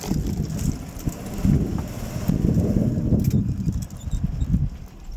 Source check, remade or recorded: recorded